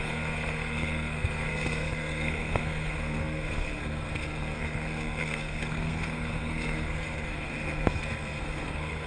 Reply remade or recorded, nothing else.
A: remade